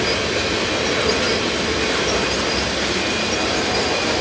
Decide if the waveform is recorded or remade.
recorded